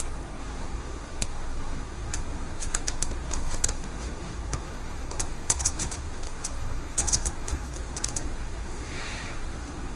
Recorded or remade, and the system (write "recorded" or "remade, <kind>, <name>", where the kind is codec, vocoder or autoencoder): remade, codec, SNAC